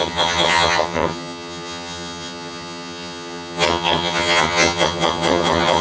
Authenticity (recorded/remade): remade